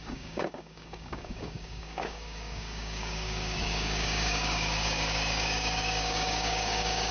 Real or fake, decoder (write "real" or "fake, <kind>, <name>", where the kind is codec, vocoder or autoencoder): fake, codec, DAC